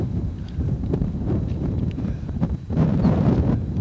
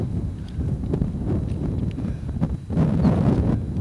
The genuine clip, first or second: second